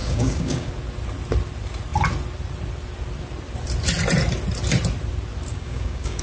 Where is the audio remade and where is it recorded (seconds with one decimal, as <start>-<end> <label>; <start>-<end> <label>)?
0.0-0.7 remade; 0.7-5.5 recorded; 5.5-6.2 remade